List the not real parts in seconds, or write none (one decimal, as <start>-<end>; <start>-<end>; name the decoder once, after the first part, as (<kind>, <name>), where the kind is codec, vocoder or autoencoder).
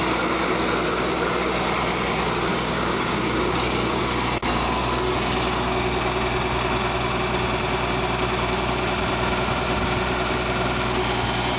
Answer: 2.5-4.0 (codec, DAC)